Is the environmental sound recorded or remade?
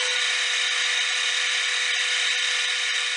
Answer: recorded